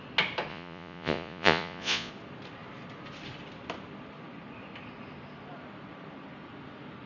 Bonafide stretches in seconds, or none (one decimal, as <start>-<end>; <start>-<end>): 0.0-0.5; 2.1-7.1